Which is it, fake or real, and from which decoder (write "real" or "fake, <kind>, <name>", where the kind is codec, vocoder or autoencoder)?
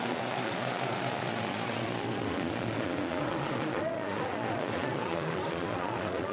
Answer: fake, vocoder, Vocos